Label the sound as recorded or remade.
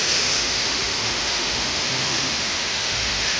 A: remade